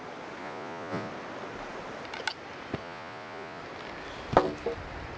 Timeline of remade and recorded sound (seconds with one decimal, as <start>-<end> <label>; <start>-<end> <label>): 0.0-0.4 recorded; 0.4-1.1 remade; 1.1-2.8 recorded; 2.8-3.6 remade; 3.6-5.2 recorded